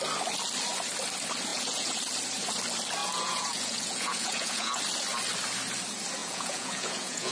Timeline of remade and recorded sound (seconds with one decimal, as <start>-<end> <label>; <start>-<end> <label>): 0.0-1.5 recorded; 1.5-2.0 remade; 2.0-3.0 recorded; 3.0-4.8 remade; 4.8-6.2 recorded; 6.2-7.3 remade